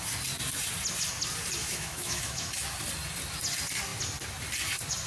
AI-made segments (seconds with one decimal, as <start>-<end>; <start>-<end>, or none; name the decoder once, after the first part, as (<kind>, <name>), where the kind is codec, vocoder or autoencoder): 1.6-2.5 (autoencoder, DAC-VAE)